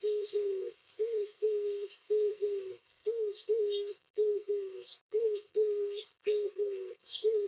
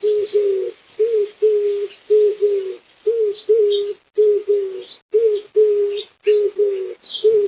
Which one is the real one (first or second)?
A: second